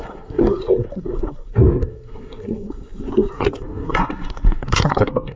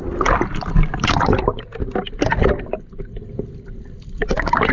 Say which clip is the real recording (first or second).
second